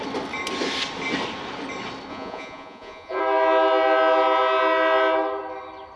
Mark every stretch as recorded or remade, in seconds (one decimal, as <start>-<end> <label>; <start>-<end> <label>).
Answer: 0.0-2.1 recorded; 2.1-3.2 remade; 3.2-6.0 recorded